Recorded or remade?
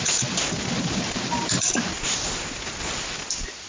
recorded